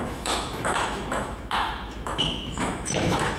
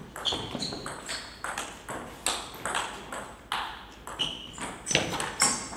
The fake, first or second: first